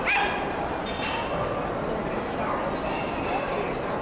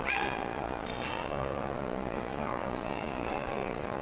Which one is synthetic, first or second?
second